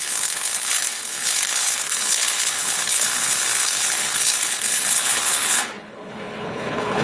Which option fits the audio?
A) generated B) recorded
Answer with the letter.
A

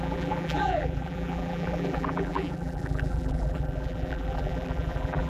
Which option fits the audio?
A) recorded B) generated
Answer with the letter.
B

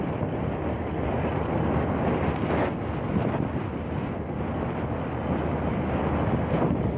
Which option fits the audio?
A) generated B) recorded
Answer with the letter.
B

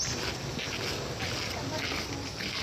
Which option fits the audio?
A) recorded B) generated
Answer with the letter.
A